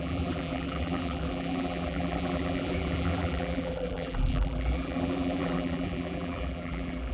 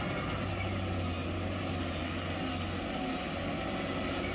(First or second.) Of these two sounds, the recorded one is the second